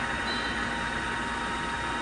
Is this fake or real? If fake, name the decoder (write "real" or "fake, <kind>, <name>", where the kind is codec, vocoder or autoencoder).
real